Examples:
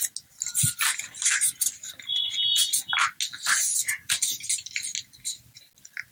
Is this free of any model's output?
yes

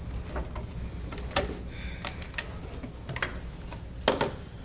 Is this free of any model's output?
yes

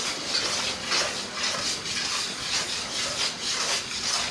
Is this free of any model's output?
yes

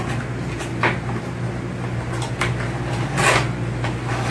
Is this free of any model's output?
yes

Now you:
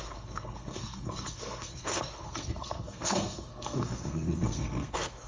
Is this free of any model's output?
no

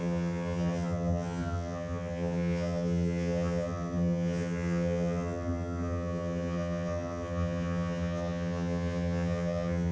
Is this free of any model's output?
no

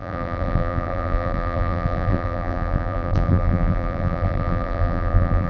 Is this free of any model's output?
no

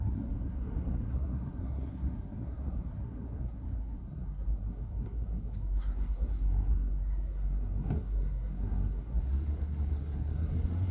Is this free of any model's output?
no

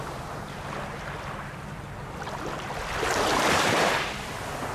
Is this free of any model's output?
yes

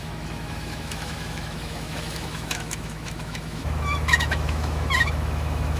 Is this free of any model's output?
no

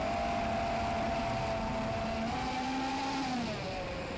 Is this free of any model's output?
yes